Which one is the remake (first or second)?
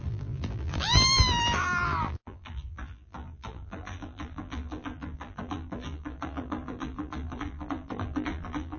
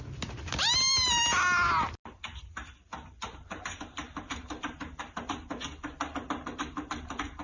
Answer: first